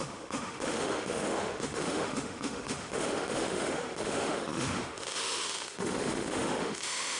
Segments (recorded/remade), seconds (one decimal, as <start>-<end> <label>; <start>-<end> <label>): 0.0-7.2 remade